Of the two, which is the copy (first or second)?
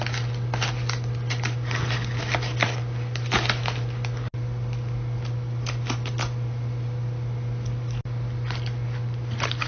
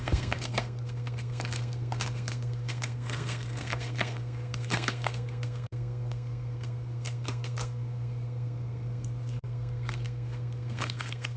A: second